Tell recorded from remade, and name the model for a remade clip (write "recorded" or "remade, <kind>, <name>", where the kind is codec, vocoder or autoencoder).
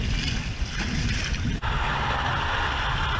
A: recorded